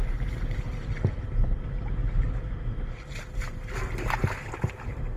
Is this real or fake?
real